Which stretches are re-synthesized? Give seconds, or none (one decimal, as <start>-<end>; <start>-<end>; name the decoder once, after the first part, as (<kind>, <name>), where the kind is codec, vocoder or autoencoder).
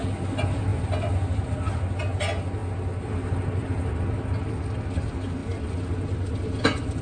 none